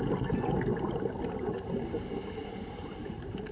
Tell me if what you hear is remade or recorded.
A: recorded